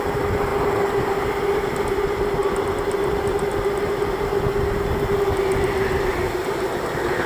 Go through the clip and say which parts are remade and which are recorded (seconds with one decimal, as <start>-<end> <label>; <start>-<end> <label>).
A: 0.0-7.3 recorded